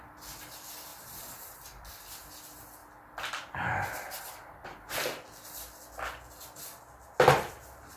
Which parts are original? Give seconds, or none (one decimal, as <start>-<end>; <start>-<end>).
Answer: 0.0-0.9; 1.9-8.0